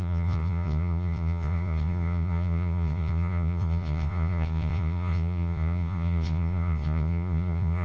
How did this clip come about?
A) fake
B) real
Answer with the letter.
A